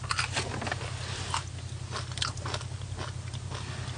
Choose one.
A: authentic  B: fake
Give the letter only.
A